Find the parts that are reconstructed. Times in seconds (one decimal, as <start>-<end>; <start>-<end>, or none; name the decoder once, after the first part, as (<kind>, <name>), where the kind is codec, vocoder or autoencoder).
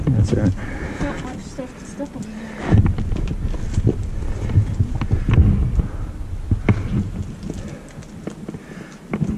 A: none